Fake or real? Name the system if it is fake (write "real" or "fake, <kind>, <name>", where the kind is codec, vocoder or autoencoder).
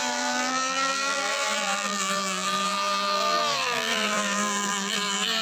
fake, vocoder, BigVGAN v2